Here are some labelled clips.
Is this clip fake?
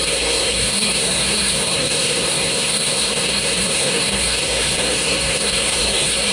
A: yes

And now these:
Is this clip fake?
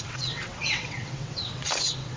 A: yes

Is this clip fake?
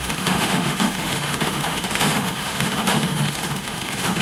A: yes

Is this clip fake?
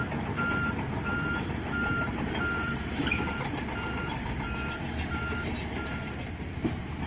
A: yes